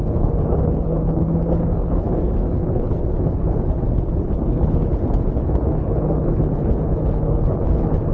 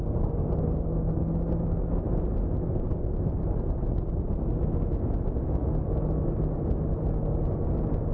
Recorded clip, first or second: second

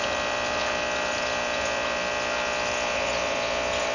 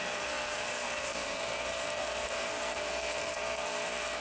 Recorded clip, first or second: first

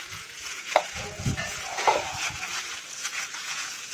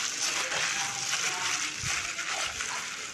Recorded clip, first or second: second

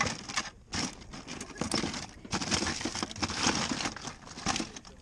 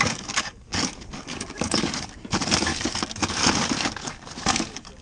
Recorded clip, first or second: first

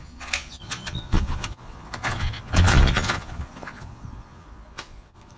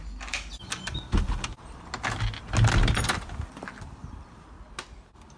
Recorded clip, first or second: second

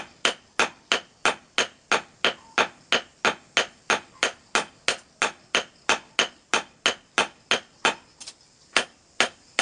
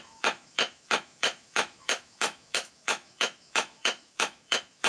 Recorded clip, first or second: first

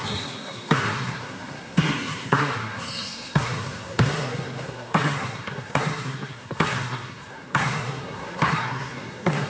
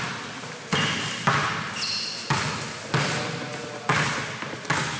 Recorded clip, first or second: second